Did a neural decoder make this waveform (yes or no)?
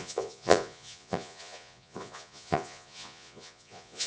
yes